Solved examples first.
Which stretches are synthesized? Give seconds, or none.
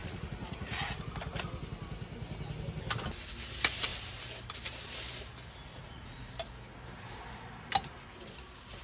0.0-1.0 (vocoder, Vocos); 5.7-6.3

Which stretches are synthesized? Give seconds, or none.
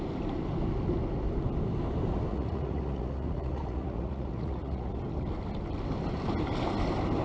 2.3-5.0 (vocoder, Vocos)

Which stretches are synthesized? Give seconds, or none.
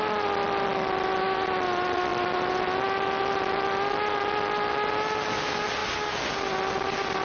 none